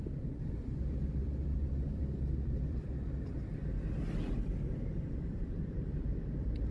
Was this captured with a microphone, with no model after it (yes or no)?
no